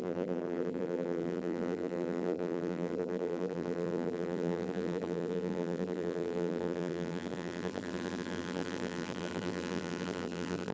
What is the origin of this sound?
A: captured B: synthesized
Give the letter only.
B